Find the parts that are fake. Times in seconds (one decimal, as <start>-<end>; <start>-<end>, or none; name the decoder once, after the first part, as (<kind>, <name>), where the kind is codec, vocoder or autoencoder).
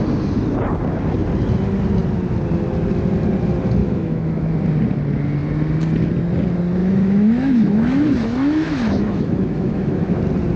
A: 3.8-4.5 (autoencoder, DAC-VAE); 6.8-10.2